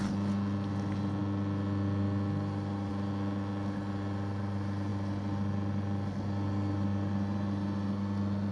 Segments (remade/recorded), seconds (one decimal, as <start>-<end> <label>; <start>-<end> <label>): 0.0-8.5 recorded